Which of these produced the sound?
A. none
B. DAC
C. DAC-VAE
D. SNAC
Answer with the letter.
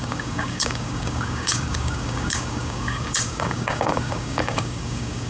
B